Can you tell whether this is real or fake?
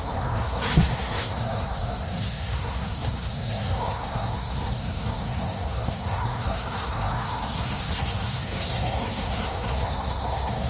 fake